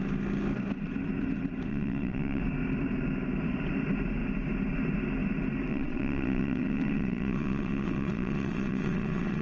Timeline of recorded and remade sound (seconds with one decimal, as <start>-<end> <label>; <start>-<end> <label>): 0.0-1.7 recorded; 1.7-2.4 remade; 2.4-5.7 recorded; 5.7-9.4 remade